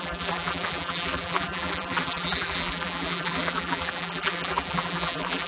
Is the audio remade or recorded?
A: remade